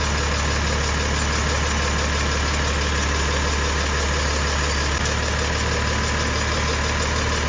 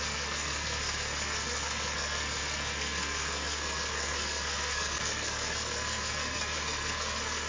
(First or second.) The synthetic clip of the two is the second